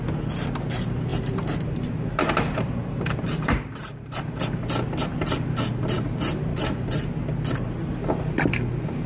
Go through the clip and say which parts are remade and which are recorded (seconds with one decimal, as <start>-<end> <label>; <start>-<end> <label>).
0.0-1.1 recorded; 1.1-4.4 remade; 4.4-6.5 recorded; 6.5-7.1 remade; 7.1-9.1 recorded